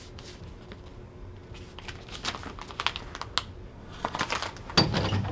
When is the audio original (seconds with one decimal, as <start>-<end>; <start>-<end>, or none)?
0.0-3.7; 4.2-5.3